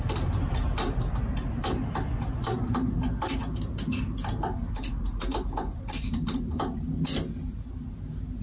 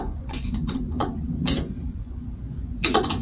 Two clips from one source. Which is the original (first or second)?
first